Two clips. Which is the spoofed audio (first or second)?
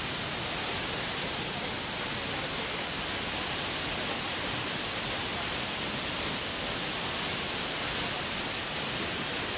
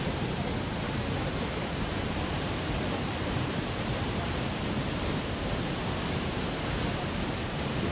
second